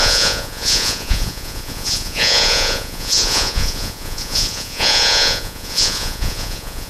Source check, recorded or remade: remade